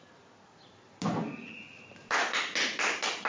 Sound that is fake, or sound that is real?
real